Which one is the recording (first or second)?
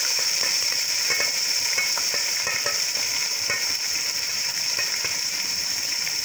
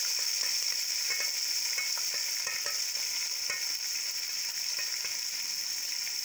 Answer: second